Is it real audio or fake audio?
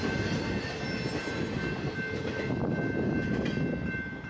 real